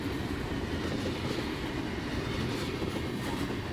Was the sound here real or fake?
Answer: real